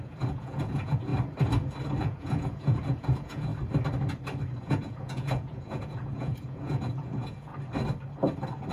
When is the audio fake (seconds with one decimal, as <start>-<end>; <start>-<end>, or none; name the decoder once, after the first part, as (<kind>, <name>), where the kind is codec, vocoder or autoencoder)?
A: 0.0-1.1 (vocoder, Vocos); 2.0-3.5; 4.6-7.5

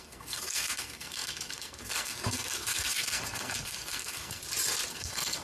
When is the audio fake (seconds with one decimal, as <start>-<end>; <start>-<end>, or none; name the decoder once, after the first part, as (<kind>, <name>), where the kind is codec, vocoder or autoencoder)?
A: 0.0-4.4 (codec, SNAC); 4.9-5.4

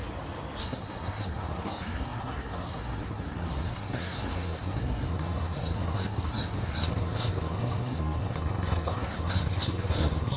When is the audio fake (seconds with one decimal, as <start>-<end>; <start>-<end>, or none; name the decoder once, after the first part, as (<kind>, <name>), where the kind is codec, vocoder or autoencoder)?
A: 0.6-10.4 (codec, SNAC)

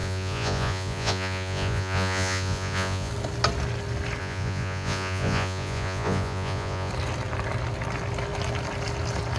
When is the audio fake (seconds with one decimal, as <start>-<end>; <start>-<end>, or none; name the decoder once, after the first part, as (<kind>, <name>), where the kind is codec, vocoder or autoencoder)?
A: 0.0-3.1 (vocoder, Vocos); 4.2-6.9

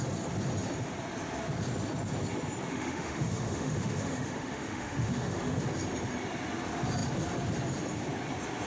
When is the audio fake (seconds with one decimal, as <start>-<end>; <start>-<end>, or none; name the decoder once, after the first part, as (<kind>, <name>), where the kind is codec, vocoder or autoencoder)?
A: 2.7-5.6 (autoencoder, DAC-VAE)